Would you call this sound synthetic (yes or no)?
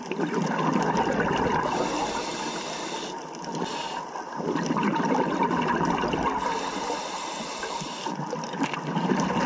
no